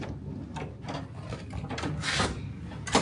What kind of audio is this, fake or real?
real